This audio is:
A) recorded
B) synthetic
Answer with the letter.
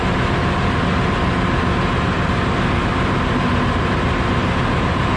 A